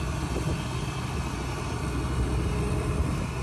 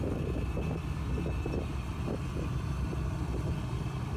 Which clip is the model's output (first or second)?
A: second